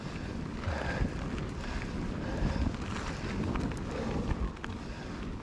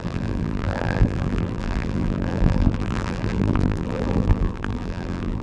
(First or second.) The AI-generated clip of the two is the second